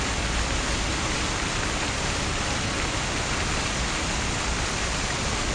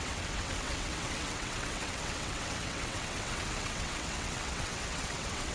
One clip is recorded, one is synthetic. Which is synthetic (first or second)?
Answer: second